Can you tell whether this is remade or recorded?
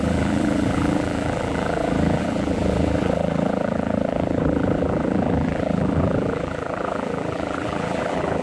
remade